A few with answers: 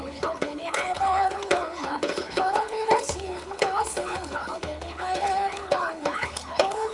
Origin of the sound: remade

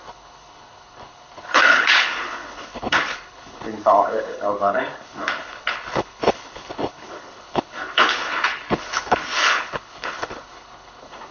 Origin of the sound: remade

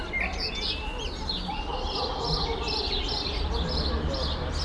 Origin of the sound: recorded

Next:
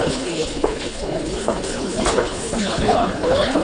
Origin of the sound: remade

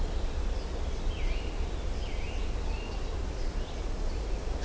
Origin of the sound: recorded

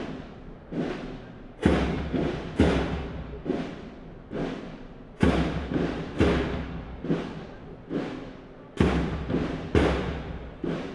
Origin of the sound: recorded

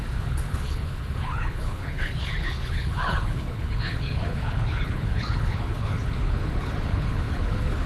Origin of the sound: remade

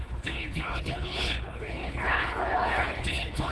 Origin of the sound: remade